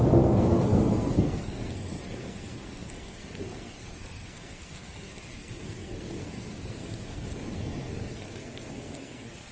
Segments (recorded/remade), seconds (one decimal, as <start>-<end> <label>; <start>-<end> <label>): 0.0-9.5 remade